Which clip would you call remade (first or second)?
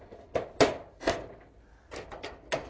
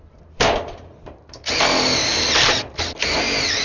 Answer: second